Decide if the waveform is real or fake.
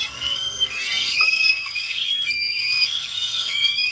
fake